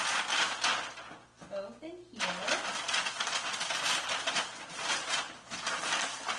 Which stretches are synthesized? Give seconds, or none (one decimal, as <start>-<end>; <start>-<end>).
none